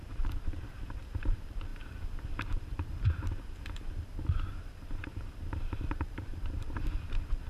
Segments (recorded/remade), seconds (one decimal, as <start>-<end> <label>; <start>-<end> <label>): 0.0-7.5 remade